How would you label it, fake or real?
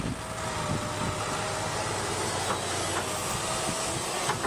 real